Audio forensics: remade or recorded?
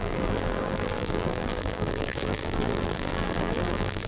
remade